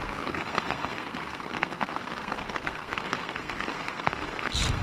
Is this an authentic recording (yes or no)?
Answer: no